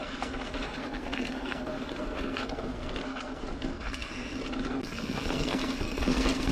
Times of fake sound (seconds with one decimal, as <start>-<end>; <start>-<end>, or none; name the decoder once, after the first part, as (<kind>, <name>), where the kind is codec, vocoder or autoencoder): 0.0-6.5 (codec, SNAC)